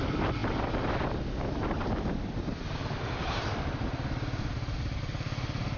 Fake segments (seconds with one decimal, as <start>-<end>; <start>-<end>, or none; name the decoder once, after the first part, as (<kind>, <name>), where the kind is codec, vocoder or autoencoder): none

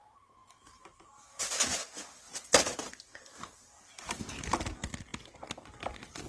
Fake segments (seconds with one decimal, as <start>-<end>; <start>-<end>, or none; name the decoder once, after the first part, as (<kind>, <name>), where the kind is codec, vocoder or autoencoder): none

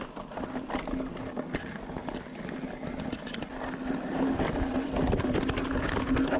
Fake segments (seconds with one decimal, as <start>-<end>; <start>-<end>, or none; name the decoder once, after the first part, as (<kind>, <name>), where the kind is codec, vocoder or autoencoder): none

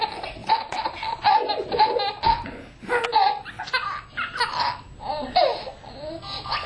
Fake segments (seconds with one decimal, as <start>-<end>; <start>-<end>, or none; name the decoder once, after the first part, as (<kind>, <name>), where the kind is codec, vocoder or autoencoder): none

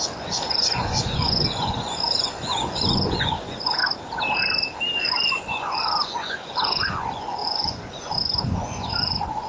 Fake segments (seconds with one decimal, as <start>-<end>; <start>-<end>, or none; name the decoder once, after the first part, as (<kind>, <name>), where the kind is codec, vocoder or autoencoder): 0.0-3.8 (vocoder, Vocos); 5.0-9.5

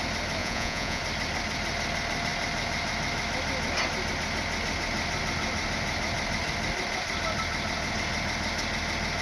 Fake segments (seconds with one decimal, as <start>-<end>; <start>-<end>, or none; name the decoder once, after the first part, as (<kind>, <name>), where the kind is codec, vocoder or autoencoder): 0.4-1.0 (vocoder, Vocos)

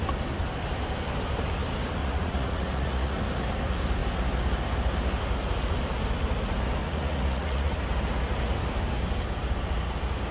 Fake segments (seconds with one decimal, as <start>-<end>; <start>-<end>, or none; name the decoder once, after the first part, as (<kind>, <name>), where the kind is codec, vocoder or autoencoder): 2.0-3.2 (vocoder, Vocos); 6.8-7.8